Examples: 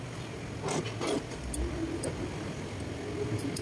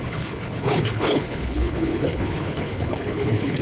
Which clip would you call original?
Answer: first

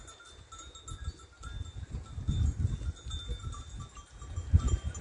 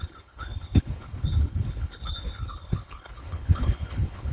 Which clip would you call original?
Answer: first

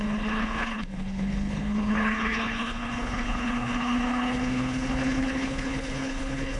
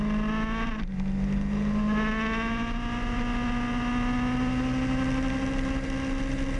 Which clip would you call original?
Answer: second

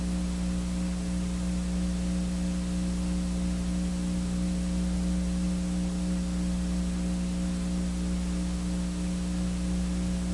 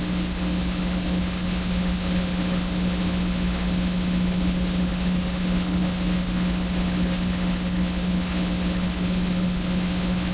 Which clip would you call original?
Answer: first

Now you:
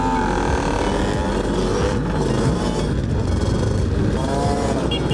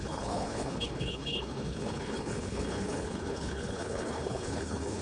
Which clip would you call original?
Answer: first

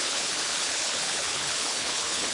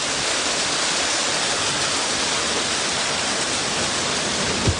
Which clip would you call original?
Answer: second